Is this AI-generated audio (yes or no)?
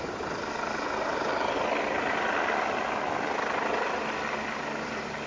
no